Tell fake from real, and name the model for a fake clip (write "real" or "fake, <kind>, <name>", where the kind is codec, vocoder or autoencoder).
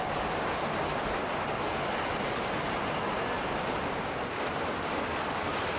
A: real